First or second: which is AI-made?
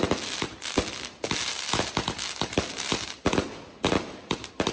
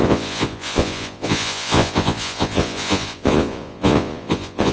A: second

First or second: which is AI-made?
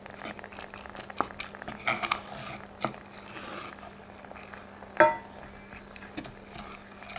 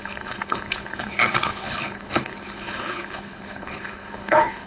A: second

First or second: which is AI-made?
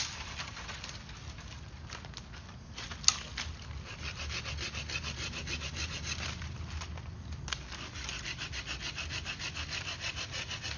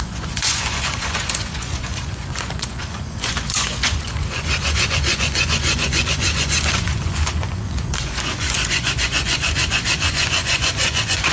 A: second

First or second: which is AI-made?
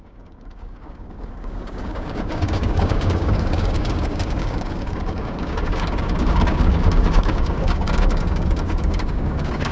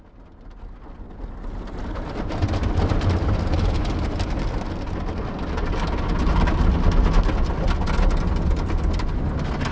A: first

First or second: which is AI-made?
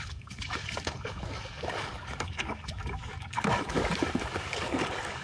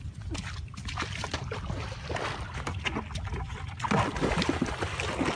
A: first